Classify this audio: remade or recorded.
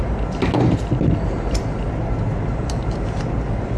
recorded